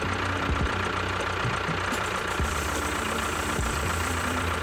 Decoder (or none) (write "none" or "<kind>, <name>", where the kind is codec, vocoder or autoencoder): vocoder, BigVGAN v2